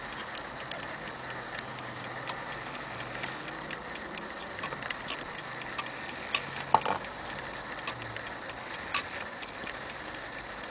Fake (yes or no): no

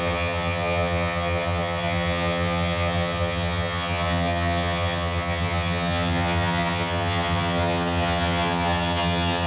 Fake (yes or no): yes